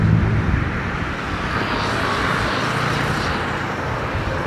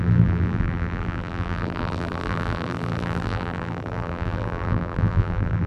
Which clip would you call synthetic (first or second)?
second